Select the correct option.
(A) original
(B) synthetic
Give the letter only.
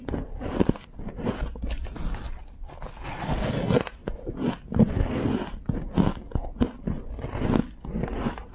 A